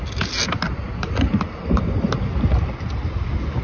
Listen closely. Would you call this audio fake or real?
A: real